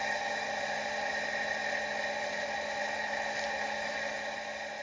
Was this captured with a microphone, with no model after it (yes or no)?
yes